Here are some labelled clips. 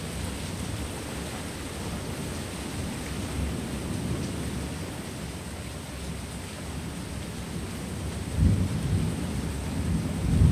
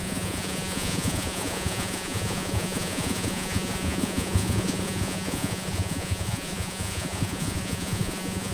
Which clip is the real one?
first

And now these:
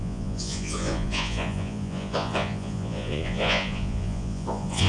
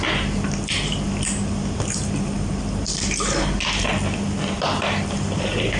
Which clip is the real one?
second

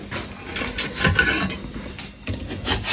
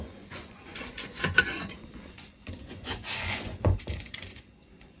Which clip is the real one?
first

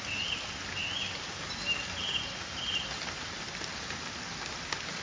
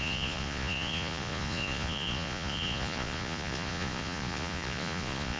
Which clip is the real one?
first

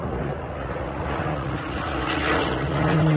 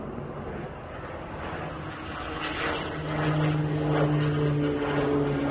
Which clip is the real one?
second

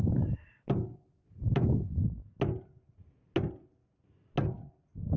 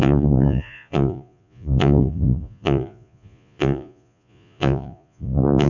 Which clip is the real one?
first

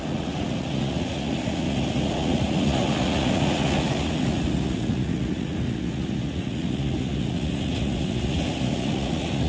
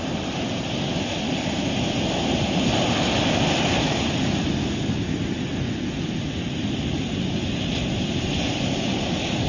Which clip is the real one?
second